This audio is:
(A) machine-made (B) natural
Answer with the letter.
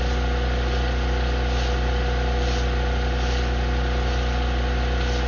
B